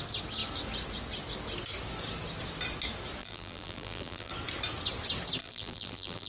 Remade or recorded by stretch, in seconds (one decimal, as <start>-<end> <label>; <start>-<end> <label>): 0.0-3.2 recorded; 3.2-4.3 remade; 4.3-5.4 recorded; 5.4-6.3 remade